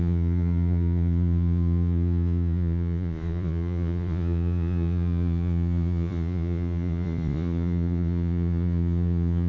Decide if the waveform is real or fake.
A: fake